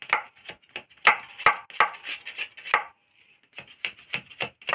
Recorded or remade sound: recorded